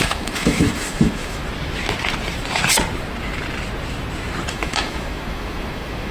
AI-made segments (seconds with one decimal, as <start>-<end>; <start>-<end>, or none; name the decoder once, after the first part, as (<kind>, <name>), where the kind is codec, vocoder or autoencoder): 0.0-1.4 (autoencoder, DAC-VAE); 4.5-6.1